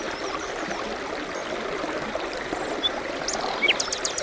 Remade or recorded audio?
recorded